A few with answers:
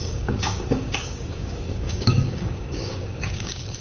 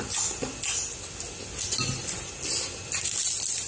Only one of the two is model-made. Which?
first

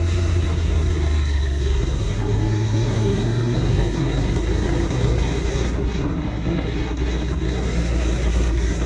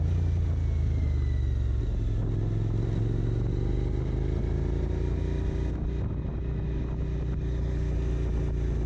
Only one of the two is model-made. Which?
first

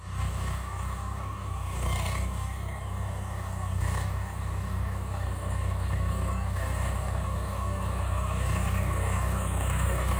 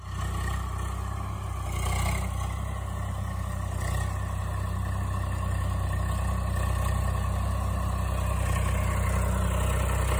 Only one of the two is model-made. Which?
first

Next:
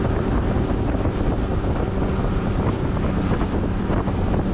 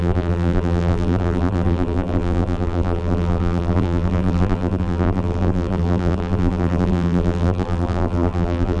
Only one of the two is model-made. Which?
second